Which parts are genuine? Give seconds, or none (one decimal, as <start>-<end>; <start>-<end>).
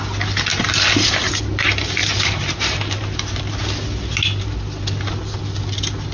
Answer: 0.0-0.5; 1.4-2.0; 3.6-6.1